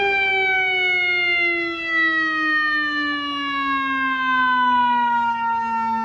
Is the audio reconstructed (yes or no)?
no